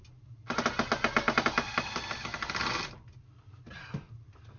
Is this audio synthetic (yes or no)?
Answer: no